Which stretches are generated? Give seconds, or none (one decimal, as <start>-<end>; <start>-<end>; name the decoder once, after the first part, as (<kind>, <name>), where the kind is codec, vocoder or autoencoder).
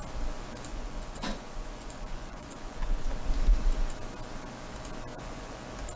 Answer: 0.7-3.1 (vocoder, Vocos); 5.1-5.6